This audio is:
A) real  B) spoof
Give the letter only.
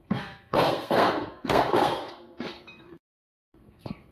B